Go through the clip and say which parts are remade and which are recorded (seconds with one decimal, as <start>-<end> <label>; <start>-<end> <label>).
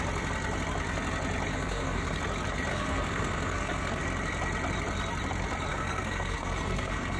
0.0-1.5 recorded; 1.5-2.2 remade; 2.2-2.7 recorded; 2.7-4.0 remade; 4.0-5.7 recorded; 5.7-7.2 remade